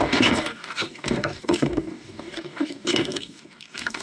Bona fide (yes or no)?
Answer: no